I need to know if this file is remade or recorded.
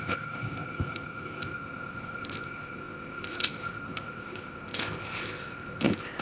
remade